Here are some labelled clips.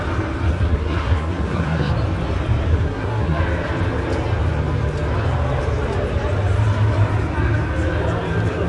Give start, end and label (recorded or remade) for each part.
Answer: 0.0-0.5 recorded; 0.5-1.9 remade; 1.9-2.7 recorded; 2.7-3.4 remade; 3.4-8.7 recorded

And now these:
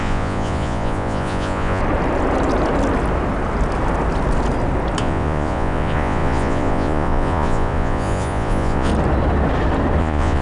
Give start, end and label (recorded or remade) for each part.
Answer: 0.0-1.8 remade; 1.8-5.0 recorded; 5.0-8.9 remade; 8.9-10.0 recorded; 10.0-10.4 remade

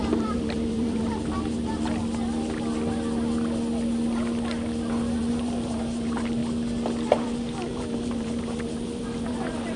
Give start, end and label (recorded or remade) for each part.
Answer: 0.0-2.0 remade; 2.0-5.2 recorded; 5.2-6.4 remade; 6.4-7.1 recorded; 7.1-9.8 remade

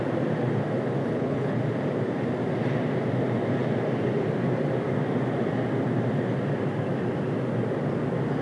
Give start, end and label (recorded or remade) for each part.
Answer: 0.0-1.0 recorded; 1.0-1.6 remade; 1.6-8.4 recorded

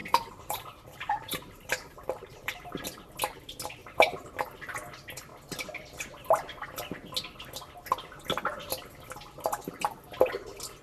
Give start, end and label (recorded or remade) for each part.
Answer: 0.0-2.8 remade; 2.8-3.8 recorded; 3.8-4.3 remade; 4.3-10.8 recorded

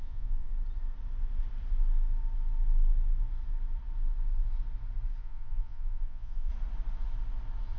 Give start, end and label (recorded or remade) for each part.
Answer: 0.0-0.5 remade; 0.5-5.2 recorded; 5.2-6.5 remade; 6.5-7.8 recorded

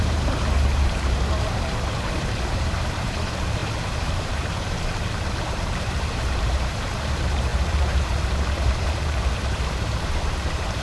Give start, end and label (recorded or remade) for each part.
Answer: 0.0-10.8 remade